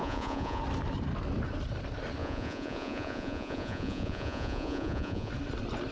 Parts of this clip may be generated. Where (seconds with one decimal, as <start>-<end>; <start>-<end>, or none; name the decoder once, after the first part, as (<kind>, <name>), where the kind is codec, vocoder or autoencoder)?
0.0-0.6 (vocoder, Vocos); 2.2-5.3